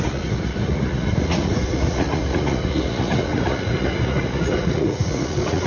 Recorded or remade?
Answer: remade